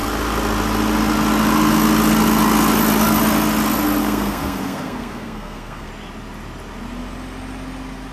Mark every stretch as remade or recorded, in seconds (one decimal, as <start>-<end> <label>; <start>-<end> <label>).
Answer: 0.0-4.0 recorded; 4.0-5.9 remade; 5.9-8.1 recorded